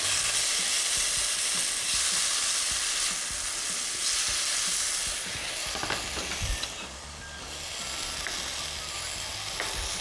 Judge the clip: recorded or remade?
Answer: recorded